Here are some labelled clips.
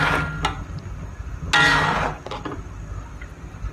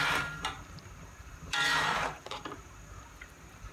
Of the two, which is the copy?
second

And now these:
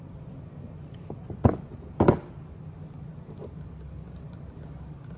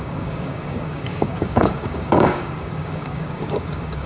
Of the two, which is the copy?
second